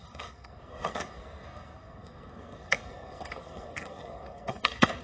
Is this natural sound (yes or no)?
no